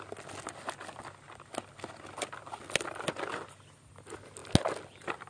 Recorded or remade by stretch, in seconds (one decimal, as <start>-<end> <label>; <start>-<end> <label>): 0.0-5.3 recorded